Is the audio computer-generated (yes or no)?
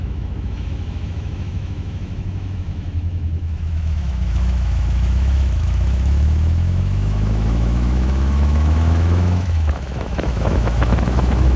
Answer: yes